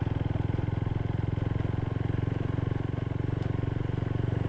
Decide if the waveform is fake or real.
real